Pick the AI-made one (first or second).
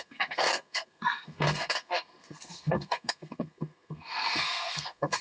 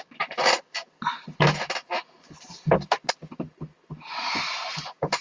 first